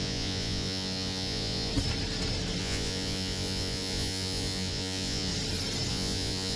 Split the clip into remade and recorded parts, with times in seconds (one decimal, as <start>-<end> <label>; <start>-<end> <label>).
0.0-1.7 remade; 1.7-2.6 recorded; 2.6-5.3 remade; 5.3-5.9 recorded; 5.9-6.6 remade